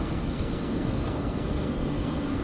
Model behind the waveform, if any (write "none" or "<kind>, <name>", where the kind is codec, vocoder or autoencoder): codec, SNAC